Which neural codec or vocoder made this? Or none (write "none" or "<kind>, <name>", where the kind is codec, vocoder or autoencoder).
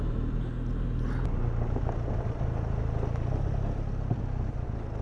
none